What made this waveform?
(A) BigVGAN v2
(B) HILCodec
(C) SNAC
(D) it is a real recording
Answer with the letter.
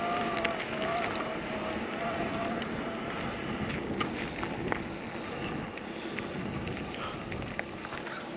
D